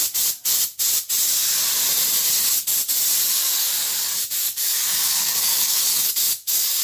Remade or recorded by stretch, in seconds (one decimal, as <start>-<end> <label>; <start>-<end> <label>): 0.0-3.3 recorded; 3.3-6.8 remade